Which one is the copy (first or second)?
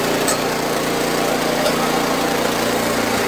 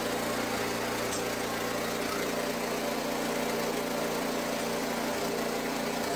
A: first